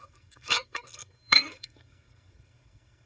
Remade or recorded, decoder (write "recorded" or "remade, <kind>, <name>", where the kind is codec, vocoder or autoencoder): remade, codec, SNAC